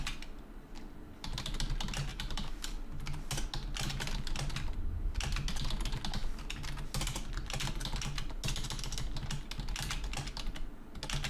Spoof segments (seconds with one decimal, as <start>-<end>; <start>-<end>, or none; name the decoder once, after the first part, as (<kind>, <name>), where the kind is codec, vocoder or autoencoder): 2.1-2.7 (vocoder, BigVGAN v2)